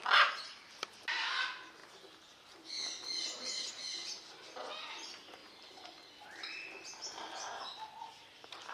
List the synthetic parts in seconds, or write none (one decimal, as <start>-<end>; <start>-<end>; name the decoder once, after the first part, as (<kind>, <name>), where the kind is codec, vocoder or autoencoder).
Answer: none